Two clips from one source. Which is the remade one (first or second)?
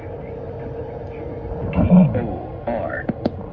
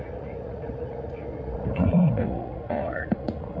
second